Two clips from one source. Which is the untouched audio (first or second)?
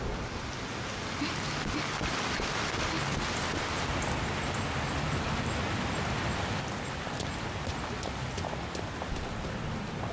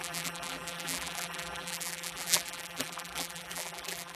first